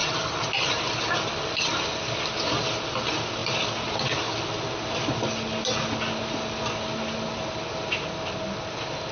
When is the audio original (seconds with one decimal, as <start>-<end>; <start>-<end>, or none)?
0.0-9.1